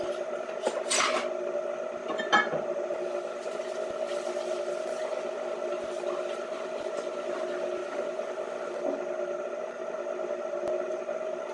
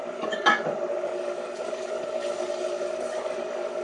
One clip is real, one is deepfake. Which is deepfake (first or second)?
second